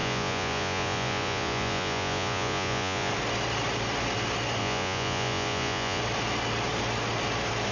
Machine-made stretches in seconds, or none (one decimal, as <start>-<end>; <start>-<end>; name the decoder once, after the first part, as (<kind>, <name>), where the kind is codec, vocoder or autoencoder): 0.0-3.1 (vocoder, Vocos); 4.6-6.0